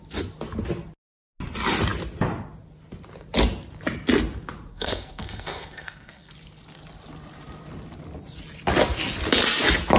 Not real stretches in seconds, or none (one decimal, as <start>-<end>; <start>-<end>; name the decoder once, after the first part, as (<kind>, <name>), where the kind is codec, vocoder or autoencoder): 4.7-6.3 (codec, SNAC)